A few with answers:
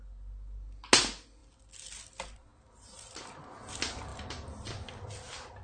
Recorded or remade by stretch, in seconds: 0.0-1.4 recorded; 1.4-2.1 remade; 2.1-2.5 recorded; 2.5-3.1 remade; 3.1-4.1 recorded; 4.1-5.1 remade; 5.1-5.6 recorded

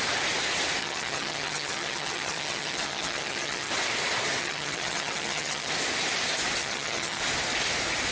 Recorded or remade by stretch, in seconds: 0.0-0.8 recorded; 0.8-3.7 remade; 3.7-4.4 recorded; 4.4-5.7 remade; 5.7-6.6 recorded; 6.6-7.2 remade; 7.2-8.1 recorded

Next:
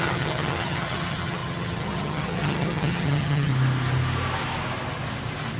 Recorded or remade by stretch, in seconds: 0.0-3.5 remade; 3.5-5.6 recorded